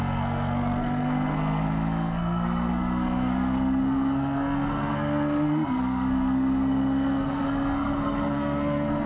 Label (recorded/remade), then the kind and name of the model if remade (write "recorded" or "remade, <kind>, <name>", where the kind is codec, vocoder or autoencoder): remade, codec, SNAC